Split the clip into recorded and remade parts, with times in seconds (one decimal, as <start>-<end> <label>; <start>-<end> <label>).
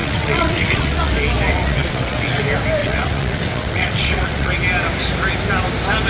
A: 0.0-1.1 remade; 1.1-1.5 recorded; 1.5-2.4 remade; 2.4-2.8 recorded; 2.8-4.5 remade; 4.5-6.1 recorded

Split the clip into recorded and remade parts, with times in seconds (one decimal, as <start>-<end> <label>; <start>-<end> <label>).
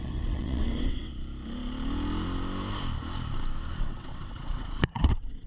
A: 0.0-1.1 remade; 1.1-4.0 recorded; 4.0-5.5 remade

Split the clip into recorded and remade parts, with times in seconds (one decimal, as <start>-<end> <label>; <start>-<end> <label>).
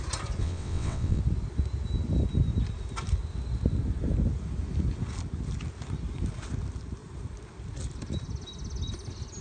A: 0.0-0.4 recorded; 0.4-1.2 remade; 1.2-9.4 recorded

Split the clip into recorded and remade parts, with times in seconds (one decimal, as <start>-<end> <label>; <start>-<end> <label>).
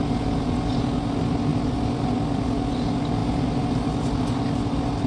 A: 0.0-5.1 recorded